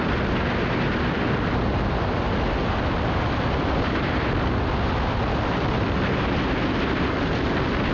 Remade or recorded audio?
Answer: recorded